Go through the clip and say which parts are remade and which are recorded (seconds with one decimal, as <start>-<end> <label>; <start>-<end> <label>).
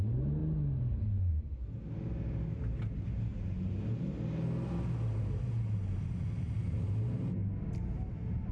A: 0.0-8.5 recorded